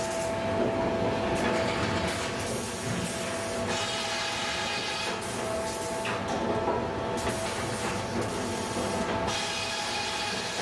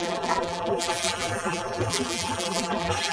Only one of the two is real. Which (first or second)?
first